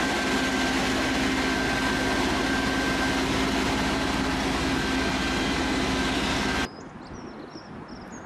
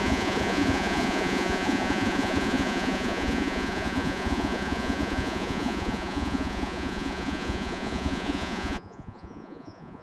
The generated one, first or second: second